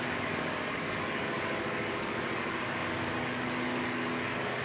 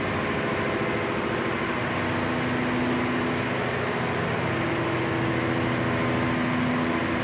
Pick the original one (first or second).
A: second